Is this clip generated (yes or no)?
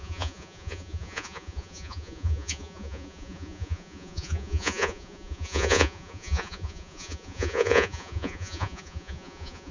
yes